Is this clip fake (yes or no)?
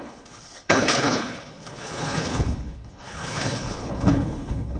yes